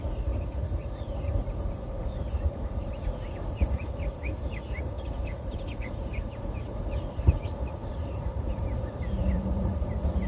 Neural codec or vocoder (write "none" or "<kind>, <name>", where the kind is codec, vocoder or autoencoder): vocoder, Vocos